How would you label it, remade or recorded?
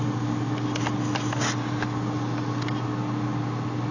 recorded